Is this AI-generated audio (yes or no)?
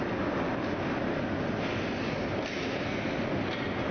no